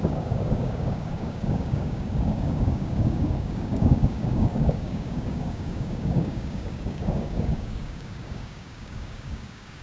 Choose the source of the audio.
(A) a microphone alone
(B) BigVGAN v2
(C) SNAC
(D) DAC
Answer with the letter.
D